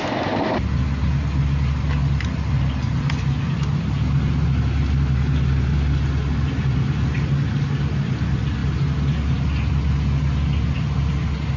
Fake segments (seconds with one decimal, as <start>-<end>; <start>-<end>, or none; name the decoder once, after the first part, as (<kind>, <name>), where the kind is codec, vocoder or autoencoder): none